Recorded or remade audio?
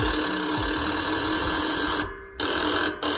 recorded